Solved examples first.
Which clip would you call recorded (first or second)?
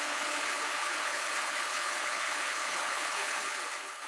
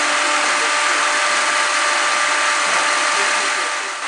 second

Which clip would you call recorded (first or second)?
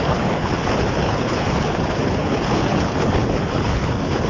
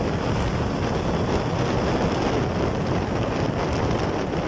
second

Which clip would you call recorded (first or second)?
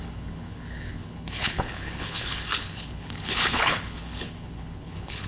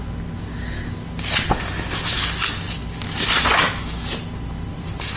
second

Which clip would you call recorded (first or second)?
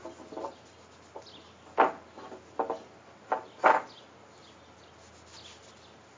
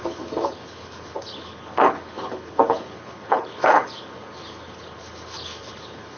first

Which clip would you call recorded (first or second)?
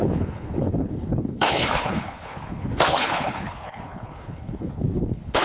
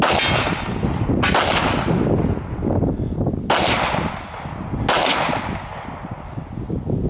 second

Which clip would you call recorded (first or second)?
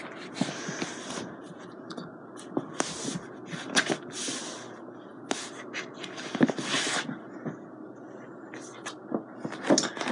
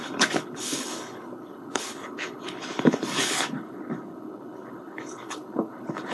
first